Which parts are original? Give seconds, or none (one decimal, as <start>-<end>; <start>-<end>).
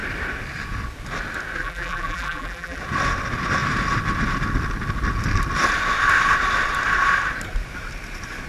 0.0-1.6; 2.8-8.5